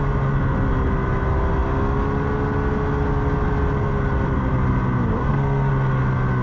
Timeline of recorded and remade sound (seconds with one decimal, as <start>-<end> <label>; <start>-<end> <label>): 0.0-5.2 recorded; 5.2-5.7 remade; 5.7-6.4 recorded

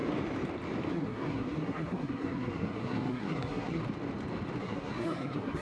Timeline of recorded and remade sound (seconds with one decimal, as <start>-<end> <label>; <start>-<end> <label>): 0.0-0.9 recorded; 0.9-3.8 remade; 3.8-4.6 recorded; 4.6-5.6 remade